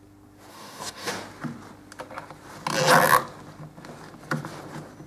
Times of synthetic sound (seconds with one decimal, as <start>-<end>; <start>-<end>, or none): 0.5-1.1